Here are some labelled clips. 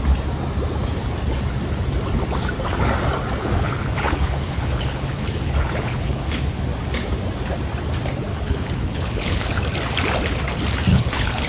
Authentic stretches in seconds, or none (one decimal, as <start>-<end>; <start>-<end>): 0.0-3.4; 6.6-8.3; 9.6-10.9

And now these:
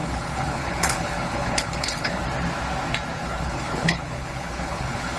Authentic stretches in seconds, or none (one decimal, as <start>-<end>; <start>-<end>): 2.2-3.2

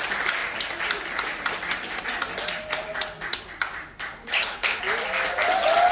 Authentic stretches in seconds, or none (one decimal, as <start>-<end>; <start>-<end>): 0.0-4.2; 4.8-5.9